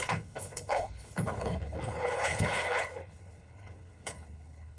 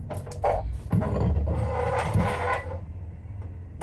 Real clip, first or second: second